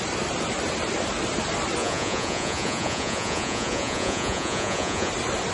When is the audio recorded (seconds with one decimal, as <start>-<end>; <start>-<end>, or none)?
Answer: 0.0-1.8; 5.1-5.5